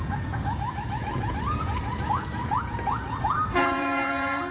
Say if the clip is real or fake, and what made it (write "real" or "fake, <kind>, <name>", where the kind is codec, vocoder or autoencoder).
fake, vocoder, Vocos